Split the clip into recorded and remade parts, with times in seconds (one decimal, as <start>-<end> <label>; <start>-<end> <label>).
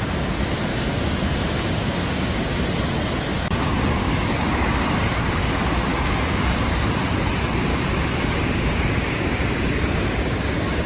0.0-0.7 recorded; 0.7-2.6 remade; 2.6-4.0 recorded; 4.0-6.8 remade; 6.8-7.7 recorded; 7.7-10.9 remade